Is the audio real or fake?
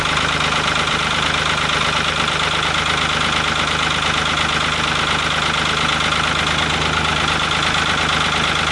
real